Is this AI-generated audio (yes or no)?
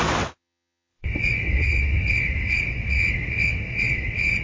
yes